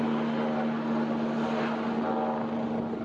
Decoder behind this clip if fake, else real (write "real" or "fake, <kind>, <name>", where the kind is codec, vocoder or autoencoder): real